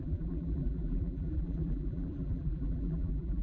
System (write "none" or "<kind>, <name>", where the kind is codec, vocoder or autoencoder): vocoder, BigVGAN v2